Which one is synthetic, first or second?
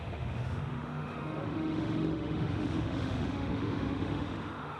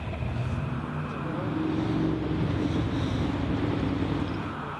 first